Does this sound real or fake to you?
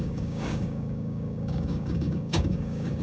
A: fake